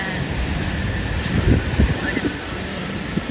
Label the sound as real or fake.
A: real